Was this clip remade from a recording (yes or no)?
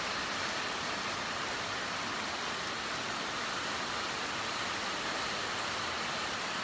no